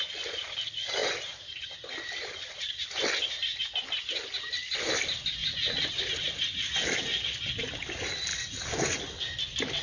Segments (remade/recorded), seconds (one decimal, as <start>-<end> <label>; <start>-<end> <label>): 0.0-5.4 recorded; 5.4-6.0 remade; 6.0-9.8 recorded